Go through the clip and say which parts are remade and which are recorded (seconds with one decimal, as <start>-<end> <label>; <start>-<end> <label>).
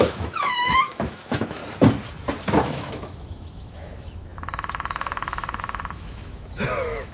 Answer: 0.0-1.6 remade; 1.6-2.4 recorded; 2.4-7.1 remade